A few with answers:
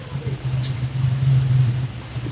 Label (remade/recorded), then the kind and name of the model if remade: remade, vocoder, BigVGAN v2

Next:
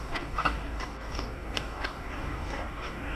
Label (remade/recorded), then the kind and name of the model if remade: remade, codec, DAC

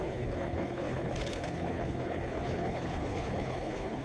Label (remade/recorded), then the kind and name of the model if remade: remade, codec, HILCodec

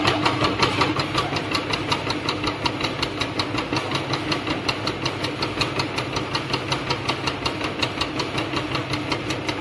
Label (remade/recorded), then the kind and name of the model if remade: recorded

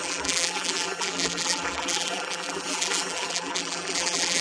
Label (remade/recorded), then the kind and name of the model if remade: remade, vocoder, BigVGAN v2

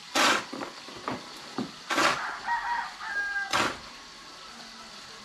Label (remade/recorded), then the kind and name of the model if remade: recorded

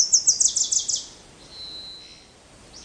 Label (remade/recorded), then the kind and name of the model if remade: recorded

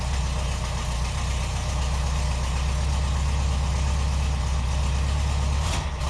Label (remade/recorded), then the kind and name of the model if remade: recorded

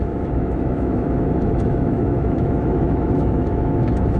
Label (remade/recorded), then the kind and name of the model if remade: remade, autoencoder, DAC-VAE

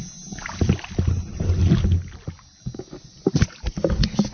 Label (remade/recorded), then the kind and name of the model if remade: recorded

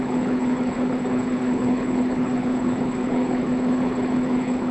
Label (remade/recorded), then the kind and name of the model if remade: remade, codec, HILCodec